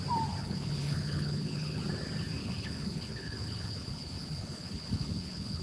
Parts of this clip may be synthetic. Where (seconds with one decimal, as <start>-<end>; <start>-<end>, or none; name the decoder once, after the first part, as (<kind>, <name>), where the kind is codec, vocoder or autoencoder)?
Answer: 0.4-1.8 (codec, HILCodec); 2.4-5.6

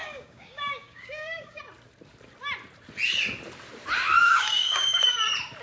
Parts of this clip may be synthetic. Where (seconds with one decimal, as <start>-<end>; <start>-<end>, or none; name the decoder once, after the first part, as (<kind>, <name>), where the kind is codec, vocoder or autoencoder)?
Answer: 0.0-1.6 (codec, DAC); 4.2-5.1

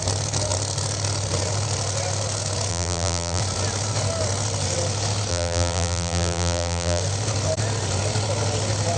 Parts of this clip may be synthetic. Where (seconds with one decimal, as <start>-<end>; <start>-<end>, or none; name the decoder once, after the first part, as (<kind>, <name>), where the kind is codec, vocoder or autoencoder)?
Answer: 2.7-3.4 (vocoder, BigVGAN v2); 5.3-7.0